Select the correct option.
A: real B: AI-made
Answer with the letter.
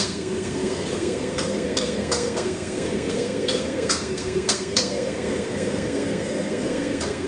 B